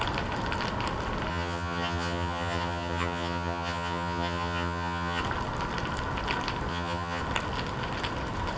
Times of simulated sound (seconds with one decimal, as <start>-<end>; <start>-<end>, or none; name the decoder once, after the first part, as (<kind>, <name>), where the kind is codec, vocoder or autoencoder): 1.3-5.2 (vocoder, HiFi-GAN); 6.7-7.2